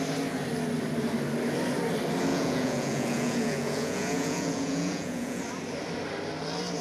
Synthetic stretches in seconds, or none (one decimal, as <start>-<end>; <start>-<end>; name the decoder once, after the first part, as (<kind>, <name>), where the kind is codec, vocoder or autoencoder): 2.3-5.4 (vocoder, Vocos)